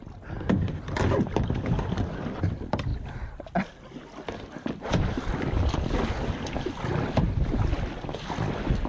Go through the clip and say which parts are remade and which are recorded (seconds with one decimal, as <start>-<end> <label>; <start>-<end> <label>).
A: 0.0-8.9 recorded